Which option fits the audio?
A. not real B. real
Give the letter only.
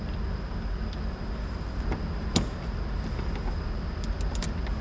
B